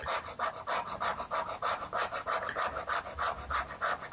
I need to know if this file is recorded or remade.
recorded